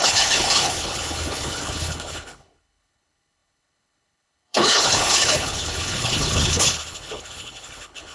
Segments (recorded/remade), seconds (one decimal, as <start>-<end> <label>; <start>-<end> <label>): 0.0-8.1 remade